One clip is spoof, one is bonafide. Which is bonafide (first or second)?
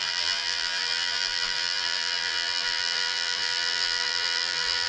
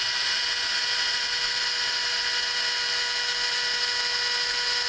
second